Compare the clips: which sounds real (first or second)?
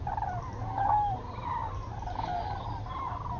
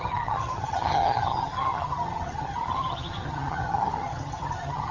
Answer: first